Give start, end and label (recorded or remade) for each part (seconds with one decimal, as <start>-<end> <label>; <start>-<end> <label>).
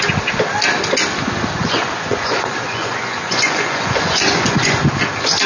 0.0-1.6 recorded; 1.6-4.9 remade; 4.9-5.5 recorded